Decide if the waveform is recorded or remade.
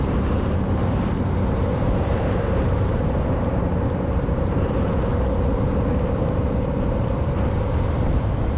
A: remade